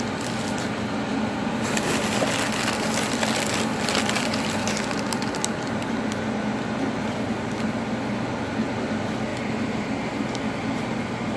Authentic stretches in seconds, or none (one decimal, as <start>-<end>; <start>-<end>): 0.0-9.3; 10.1-11.4